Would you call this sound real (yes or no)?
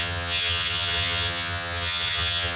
no